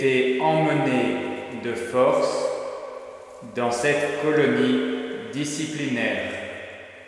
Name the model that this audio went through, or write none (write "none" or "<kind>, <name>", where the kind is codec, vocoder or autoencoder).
none